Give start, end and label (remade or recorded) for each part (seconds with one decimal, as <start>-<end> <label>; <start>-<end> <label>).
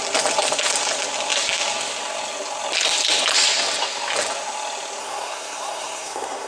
0.0-5.0 recorded; 5.0-6.5 remade